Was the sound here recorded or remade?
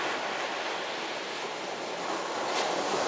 recorded